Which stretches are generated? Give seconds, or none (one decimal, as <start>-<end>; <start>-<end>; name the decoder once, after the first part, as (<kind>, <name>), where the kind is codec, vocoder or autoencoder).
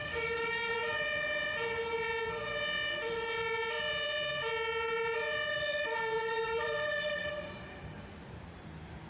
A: 0.0-0.8 (vocoder, BigVGAN v2); 5.5-7.2